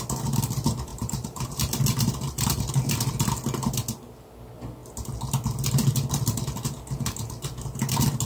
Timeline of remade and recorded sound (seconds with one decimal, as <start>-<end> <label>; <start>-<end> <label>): 0.0-0.9 recorded; 0.9-2.7 remade; 2.7-8.3 recorded